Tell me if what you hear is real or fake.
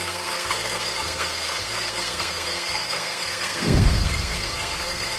fake